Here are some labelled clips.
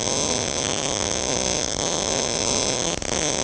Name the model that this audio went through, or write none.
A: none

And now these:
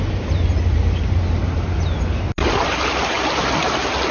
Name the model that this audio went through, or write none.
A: none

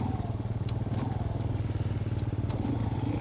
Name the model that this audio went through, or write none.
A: none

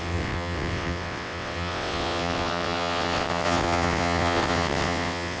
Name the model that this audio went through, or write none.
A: vocoder, WaveNeXt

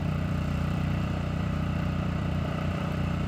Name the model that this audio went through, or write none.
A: vocoder, BigVGAN v2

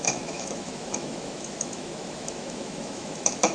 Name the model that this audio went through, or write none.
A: autoencoder, DAC-VAE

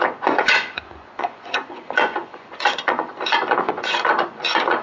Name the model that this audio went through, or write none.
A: vocoder, Vocos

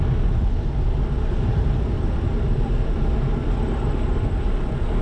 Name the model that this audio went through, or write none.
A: none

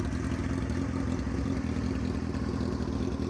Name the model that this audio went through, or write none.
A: none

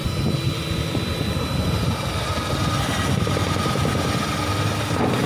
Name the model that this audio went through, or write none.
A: none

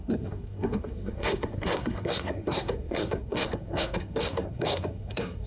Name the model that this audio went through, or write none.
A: codec, SNAC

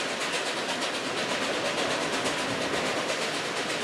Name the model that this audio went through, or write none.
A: none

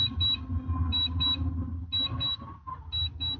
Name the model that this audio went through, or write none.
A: none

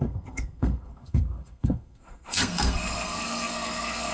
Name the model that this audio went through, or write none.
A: codec, SNAC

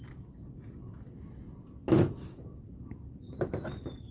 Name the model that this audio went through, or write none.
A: none